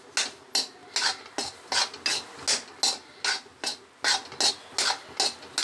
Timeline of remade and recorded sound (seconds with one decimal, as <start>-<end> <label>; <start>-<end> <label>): 0.0-5.6 recorded